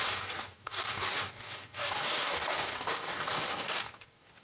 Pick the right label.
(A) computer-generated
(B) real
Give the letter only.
A